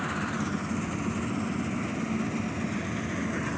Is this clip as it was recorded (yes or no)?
yes